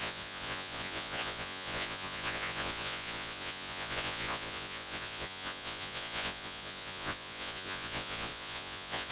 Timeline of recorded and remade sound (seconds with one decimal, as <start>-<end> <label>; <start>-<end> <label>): 0.0-9.1 remade